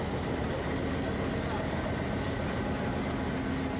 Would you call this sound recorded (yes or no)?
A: yes